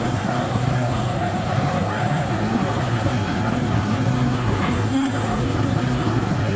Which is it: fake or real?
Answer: fake